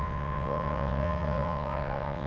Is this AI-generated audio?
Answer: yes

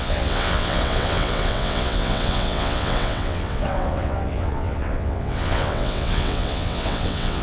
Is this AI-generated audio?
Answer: yes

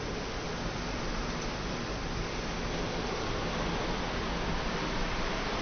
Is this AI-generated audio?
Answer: no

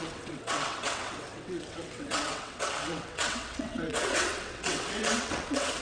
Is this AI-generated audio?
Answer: yes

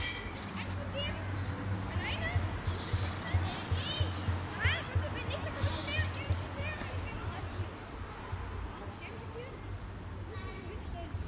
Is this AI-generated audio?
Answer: no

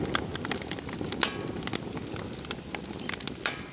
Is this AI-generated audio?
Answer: no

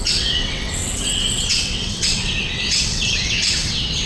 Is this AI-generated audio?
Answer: yes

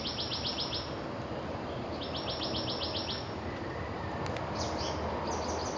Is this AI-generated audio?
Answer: no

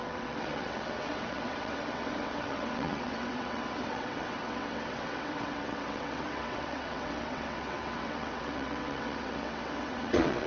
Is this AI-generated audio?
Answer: yes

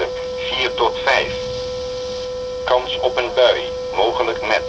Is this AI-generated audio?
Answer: no